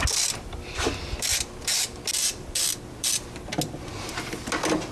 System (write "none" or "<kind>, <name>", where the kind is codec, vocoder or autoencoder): none